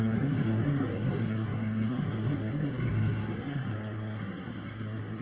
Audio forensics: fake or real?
fake